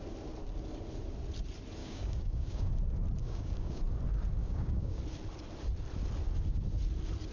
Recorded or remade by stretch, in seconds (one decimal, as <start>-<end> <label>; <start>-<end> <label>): 0.0-1.8 recorded; 1.8-2.7 remade; 2.7-3.2 recorded; 3.2-3.8 remade; 3.8-4.4 recorded; 4.4-5.0 remade; 5.0-7.3 recorded